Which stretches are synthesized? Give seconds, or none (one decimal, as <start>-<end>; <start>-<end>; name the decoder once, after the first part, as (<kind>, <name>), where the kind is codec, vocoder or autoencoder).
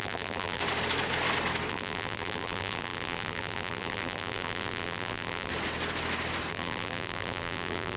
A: 0.0-0.6 (vocoder, BigVGAN v2); 1.7-5.5; 6.5-8.0